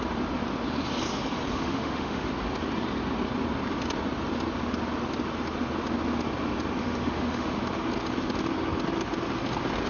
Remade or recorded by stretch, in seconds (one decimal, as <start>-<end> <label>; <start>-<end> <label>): 0.0-1.5 recorded; 1.5-2.3 remade; 2.3-6.8 recorded; 6.8-7.6 remade; 7.6-9.9 recorded